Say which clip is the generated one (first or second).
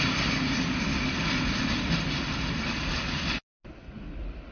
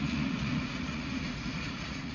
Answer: second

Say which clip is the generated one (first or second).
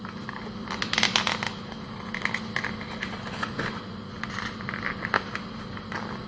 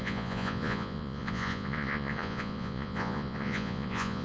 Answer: second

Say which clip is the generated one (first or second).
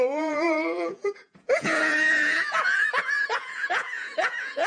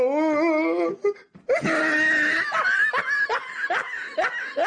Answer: first